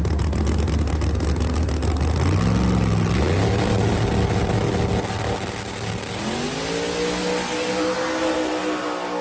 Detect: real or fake real